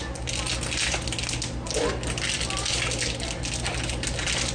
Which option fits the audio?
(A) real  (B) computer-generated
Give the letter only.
A